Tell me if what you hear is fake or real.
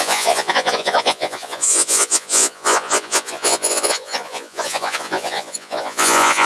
fake